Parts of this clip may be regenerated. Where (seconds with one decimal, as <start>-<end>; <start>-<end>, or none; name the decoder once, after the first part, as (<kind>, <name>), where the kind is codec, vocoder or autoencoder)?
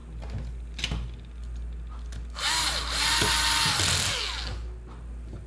none